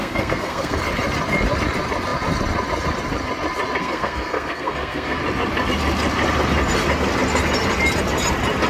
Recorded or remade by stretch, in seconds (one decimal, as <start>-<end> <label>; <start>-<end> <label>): 0.0-0.8 remade; 0.8-3.8 recorded; 3.8-5.2 remade; 5.2-8.7 recorded